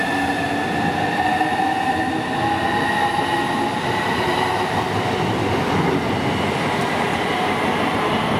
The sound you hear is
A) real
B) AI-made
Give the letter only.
A